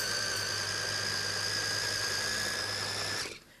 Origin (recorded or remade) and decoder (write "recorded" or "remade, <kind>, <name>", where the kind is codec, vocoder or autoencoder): recorded